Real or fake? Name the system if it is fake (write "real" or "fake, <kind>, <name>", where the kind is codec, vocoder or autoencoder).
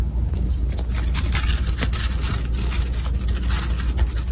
real